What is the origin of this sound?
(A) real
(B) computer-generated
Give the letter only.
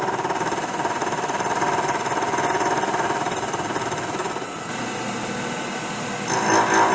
A